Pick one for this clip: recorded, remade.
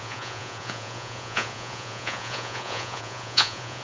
remade